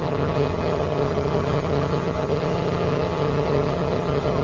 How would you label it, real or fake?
fake